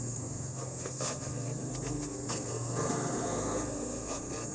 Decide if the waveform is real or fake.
fake